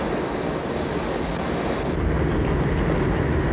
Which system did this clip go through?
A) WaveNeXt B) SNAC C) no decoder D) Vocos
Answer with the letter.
C